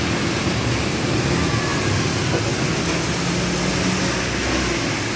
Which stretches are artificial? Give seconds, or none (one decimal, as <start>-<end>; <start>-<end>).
none